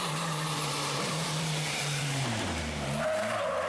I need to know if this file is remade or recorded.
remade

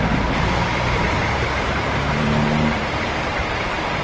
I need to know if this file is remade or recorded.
remade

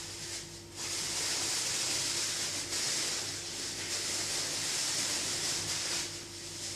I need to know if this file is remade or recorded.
recorded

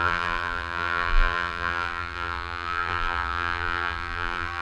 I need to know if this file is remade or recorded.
remade